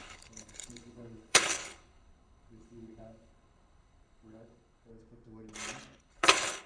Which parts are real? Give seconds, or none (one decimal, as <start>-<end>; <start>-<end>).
4.9-6.0